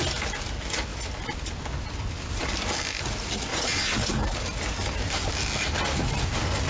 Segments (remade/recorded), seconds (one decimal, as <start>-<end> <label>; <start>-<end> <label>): 0.0-3.5 recorded; 3.5-4.1 remade; 4.1-6.7 recorded